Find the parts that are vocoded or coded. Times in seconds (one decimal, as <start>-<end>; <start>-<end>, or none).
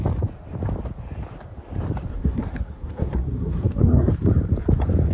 2.1-4.1